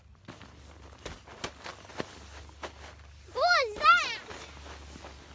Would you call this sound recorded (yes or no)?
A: yes